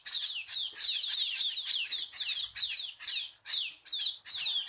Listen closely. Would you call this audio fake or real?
real